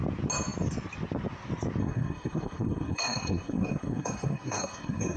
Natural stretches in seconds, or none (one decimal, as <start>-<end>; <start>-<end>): 0.0-1.8